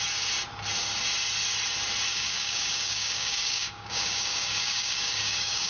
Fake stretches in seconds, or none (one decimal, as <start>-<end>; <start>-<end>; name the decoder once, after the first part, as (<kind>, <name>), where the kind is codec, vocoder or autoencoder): 2.1-5.7 (codec, DAC)